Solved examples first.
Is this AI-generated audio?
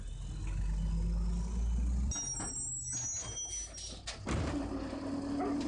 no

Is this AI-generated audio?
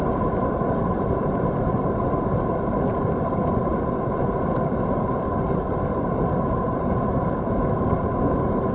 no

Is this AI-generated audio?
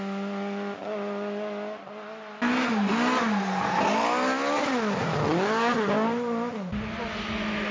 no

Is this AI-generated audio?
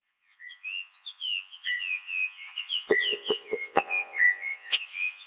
yes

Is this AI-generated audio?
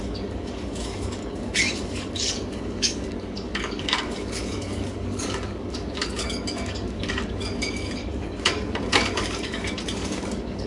yes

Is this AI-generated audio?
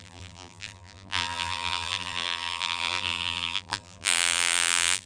yes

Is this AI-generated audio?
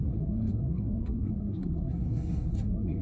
yes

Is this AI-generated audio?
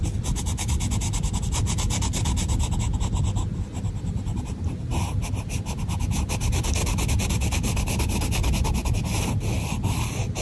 no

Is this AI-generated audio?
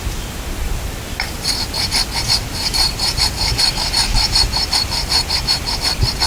no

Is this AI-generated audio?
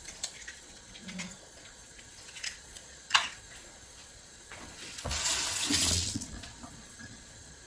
yes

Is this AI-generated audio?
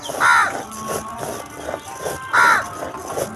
no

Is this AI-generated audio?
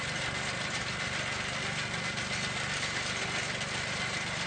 no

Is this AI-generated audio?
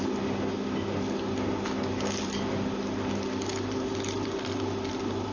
no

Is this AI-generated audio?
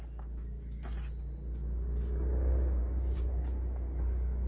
no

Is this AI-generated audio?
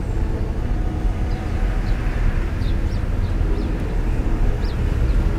no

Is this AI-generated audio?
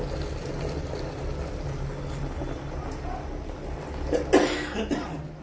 no